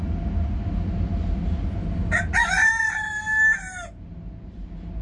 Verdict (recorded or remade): recorded